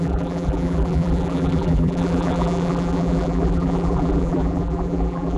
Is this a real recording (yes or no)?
no